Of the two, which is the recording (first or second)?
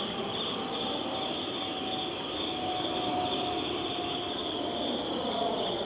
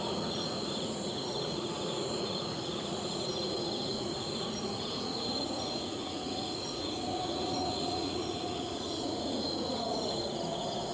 first